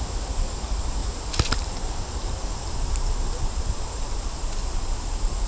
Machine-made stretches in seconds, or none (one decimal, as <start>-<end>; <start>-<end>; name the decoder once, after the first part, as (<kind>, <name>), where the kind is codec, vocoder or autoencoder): 1.0-4.2 (vocoder, BigVGAN v2)